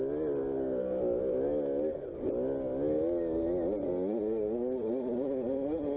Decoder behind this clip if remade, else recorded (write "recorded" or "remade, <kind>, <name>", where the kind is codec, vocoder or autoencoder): recorded